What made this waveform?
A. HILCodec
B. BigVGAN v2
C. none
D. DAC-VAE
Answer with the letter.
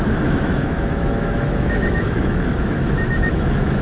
D